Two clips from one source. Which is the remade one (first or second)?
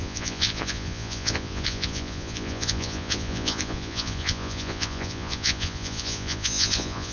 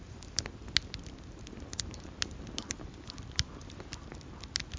first